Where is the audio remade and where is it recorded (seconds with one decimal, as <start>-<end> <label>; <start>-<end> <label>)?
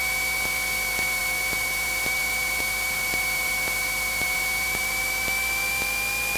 0.0-1.2 recorded; 1.2-5.0 remade; 5.0-6.4 recorded